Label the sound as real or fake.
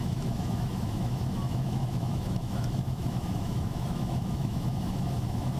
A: fake